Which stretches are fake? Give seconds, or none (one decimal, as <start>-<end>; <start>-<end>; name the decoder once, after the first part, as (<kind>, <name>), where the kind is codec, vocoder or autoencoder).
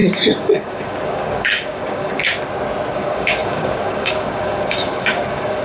0.0-2.2 (codec, DAC); 2.9-5.6